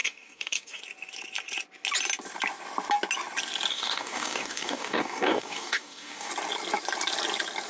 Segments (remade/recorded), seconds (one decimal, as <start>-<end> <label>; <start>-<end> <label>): 0.0-0.8 remade; 0.8-3.7 recorded; 3.7-6.3 remade; 6.3-7.7 recorded